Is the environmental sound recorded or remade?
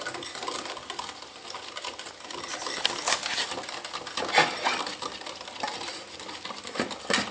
recorded